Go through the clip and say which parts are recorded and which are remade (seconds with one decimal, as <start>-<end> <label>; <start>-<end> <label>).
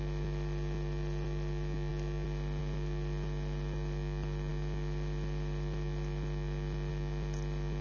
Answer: 0.0-7.8 recorded